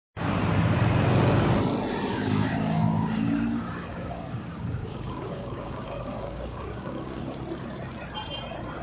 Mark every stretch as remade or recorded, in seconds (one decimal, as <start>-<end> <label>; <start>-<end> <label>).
0.0-2.1 recorded; 2.1-7.2 remade; 7.2-8.8 recorded